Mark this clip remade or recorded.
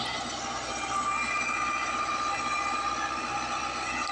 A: recorded